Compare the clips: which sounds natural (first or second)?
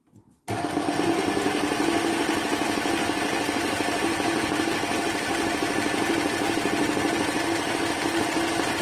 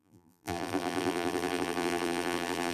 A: first